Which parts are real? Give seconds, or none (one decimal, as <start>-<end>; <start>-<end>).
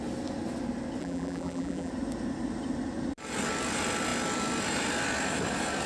0.0-1.0; 1.9-5.9